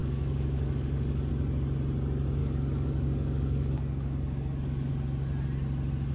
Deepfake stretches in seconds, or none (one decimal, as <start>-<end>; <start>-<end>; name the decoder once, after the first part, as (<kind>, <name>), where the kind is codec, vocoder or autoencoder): 0.0-1.3 (codec, DAC); 2.4-4.9